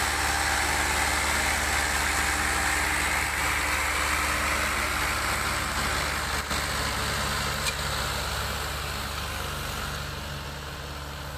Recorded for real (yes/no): yes